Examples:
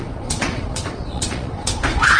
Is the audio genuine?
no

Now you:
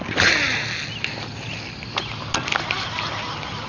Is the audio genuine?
yes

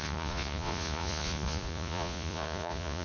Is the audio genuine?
no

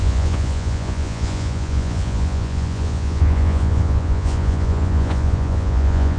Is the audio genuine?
no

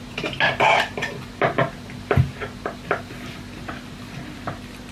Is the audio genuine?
yes